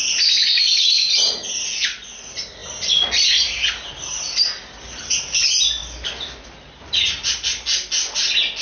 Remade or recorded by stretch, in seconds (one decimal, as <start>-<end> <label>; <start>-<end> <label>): 0.0-8.6 recorded

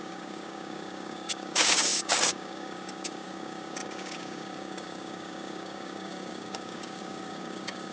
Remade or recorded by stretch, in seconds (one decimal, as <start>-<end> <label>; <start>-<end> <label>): 0.0-7.9 remade

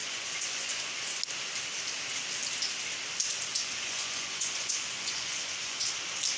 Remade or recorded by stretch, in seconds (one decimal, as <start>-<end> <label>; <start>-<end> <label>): 0.0-1.2 remade; 1.2-3.5 recorded; 3.5-5.9 remade; 5.9-6.4 recorded

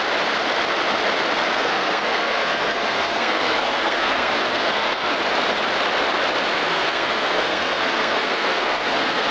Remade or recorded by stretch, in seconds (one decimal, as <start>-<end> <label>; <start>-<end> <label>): 0.0-1.5 recorded; 1.5-5.2 remade; 5.2-6.6 recorded; 6.6-9.3 remade